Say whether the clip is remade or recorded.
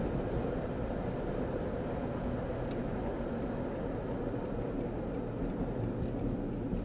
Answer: recorded